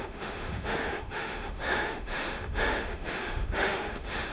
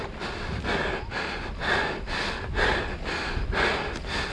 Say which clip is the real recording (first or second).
second